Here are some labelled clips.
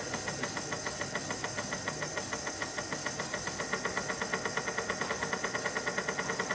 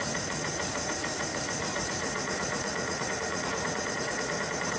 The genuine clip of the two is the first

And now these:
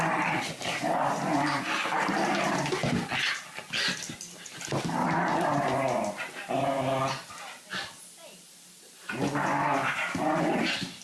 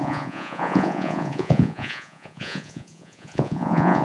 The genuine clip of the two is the first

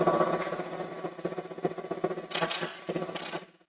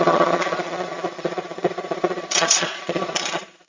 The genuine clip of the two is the first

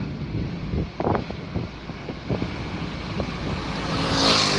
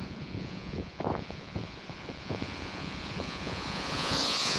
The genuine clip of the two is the first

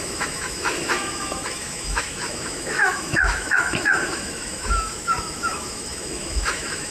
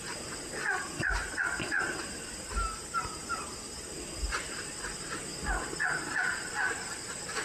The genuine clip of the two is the second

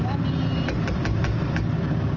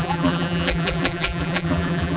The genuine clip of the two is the first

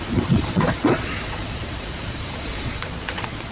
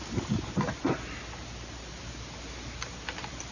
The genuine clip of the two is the second